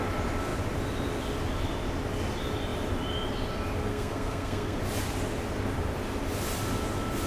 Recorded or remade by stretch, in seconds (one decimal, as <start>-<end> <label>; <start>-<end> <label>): 0.0-3.9 recorded; 3.9-4.8 remade; 4.8-7.3 recorded